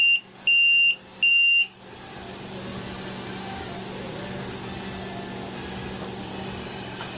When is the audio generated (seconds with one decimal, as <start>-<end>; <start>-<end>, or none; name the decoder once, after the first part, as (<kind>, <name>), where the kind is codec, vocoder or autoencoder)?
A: 1.3-1.8 (codec, DAC); 6.2-7.2